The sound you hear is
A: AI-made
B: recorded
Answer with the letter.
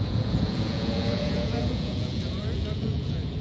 A